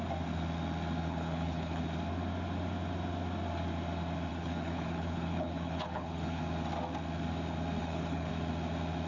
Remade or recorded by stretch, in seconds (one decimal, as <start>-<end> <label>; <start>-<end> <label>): 0.0-1.0 recorded; 1.0-1.8 remade; 1.8-4.3 recorded; 4.3-6.4 remade; 6.4-7.8 recorded; 7.8-8.3 remade; 8.3-9.1 recorded